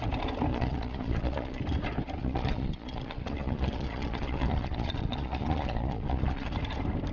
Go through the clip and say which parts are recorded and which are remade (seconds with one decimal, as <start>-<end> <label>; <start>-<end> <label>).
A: 0.0-0.5 recorded; 0.5-1.6 remade; 1.6-2.2 recorded; 2.2-6.5 remade; 6.5-7.1 recorded